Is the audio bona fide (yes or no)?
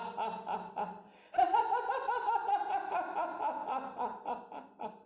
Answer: yes